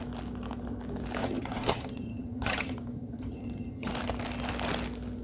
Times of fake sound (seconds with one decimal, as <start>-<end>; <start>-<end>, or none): 1.2-3.9